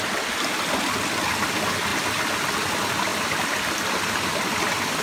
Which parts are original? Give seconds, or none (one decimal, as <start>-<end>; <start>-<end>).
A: 0.0-5.0